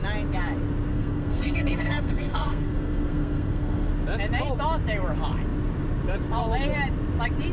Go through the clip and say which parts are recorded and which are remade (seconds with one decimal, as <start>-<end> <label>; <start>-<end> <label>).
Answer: 0.0-0.9 recorded; 0.9-3.9 remade; 3.9-7.5 recorded